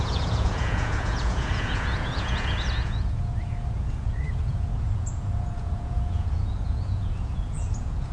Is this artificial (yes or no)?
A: yes